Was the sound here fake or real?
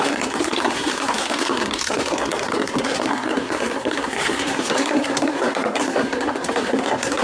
fake